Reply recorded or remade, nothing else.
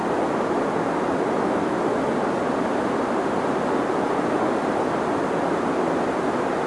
recorded